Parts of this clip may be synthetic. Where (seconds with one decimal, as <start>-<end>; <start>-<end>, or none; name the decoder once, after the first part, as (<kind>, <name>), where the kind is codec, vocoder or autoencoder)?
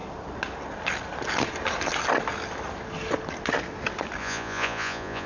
4.2-5.3 (vocoder, Vocos)